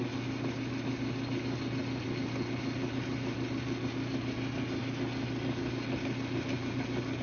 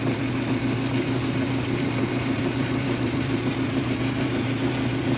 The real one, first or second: first